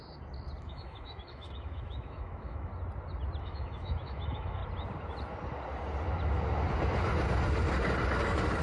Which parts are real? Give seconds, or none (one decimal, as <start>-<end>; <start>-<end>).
0.0-0.6; 2.7-3.4; 4.6-8.6